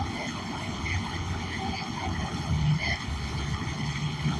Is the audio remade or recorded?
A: remade